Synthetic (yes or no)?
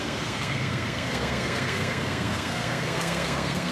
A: yes